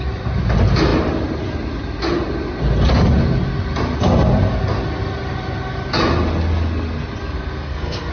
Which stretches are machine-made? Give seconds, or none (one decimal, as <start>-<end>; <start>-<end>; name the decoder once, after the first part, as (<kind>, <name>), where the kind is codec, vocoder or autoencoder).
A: 7.2-8.1 (codec, SNAC)